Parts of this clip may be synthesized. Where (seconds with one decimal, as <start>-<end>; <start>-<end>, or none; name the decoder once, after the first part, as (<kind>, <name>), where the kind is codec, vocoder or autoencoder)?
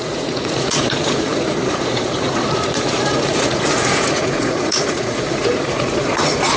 0.0-6.6 (vocoder, Vocos)